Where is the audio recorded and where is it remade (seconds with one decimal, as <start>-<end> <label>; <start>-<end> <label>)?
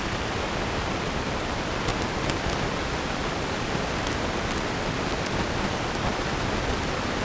0.0-1.3 remade; 1.3-1.9 recorded; 1.9-6.2 remade; 6.2-7.2 recorded